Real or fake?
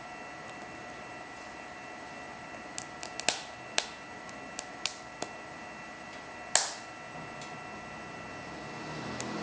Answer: real